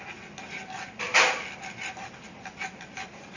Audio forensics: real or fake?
real